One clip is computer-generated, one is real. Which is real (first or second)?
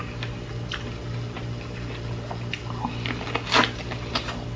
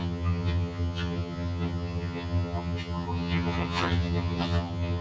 first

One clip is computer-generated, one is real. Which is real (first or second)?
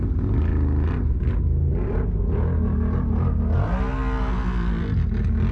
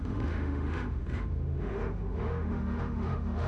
first